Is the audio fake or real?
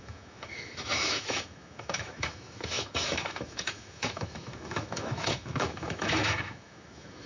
fake